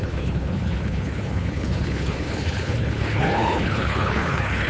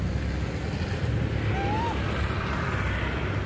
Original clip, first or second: second